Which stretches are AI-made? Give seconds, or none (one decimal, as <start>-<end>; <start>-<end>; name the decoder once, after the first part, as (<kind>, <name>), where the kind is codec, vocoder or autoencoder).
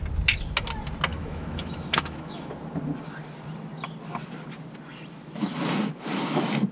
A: 1.1-2.5 (autoencoder, DAC-VAE)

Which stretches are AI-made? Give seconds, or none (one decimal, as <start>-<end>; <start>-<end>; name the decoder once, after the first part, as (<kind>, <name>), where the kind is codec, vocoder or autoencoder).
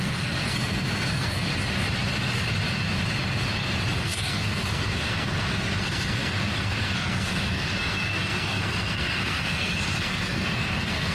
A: 0.0-1.5 (codec, SNAC); 4.0-11.1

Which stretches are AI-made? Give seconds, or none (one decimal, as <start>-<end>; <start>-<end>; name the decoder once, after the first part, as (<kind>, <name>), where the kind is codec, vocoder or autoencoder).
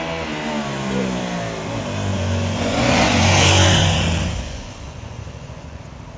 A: 2.1-5.8 (vocoder, Vocos)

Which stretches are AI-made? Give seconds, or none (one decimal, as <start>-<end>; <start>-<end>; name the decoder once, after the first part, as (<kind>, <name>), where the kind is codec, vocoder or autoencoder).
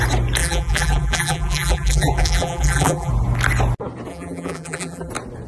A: 0.4-3.1 (vocoder, BigVGAN v2); 4.1-5.1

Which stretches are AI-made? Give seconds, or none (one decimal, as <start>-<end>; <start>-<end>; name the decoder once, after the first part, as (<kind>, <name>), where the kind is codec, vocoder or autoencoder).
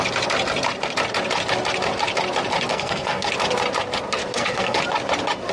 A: 2.7-3.3 (codec, SNAC); 4.2-4.8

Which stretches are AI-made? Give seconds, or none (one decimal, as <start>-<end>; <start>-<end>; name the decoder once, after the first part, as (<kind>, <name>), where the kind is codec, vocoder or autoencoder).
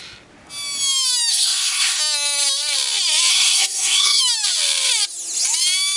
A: 1.3-2.0 (codec, SNAC); 3.3-4.2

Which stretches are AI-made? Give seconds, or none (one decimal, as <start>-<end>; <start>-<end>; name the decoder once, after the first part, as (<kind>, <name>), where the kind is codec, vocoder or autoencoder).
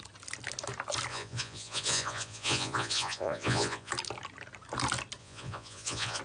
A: 1.1-3.9 (vocoder, Vocos); 5.2-6.2